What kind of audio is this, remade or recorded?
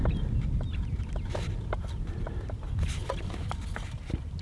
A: recorded